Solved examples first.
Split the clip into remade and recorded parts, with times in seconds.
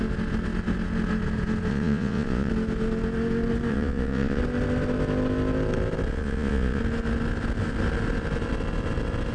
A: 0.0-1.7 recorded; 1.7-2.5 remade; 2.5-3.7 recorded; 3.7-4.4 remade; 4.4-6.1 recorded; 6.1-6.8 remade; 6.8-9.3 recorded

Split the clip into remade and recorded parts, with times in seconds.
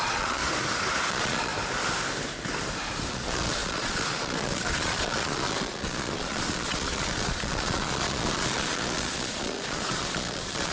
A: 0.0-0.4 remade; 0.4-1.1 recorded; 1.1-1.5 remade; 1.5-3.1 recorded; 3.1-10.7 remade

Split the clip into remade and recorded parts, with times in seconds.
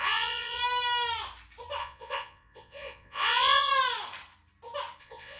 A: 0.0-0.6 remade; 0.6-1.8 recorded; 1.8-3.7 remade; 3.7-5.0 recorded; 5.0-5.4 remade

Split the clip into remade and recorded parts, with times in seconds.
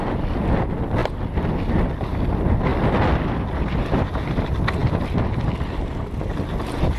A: 0.0-7.0 recorded